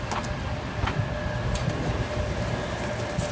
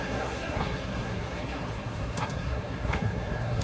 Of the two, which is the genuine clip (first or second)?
first